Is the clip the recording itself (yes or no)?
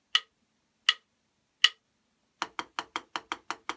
yes